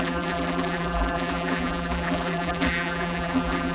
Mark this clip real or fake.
fake